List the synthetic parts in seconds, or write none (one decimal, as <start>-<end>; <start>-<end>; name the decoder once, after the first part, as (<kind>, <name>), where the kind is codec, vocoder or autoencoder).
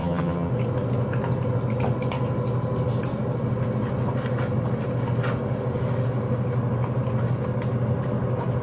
0.0-0.5 (vocoder, HiFi-GAN)